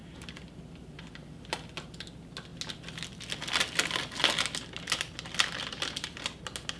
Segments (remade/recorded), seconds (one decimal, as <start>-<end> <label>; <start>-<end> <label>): 0.0-6.8 recorded